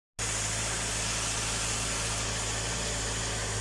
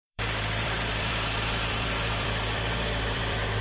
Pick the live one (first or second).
first